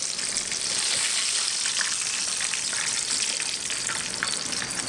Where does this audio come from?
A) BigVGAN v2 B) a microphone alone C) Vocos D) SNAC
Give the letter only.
B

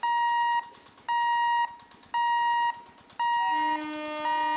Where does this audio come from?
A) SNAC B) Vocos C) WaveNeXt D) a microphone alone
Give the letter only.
D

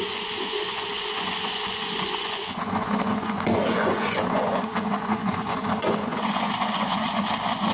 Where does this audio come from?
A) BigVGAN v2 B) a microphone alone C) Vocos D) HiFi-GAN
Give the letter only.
C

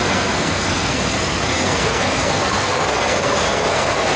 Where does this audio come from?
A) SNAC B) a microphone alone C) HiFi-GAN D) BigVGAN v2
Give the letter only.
A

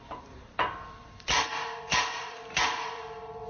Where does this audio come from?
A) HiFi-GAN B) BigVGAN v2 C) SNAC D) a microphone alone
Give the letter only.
B